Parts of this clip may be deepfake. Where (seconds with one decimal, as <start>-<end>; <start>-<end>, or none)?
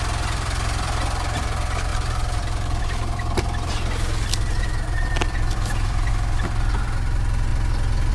0.0-7.5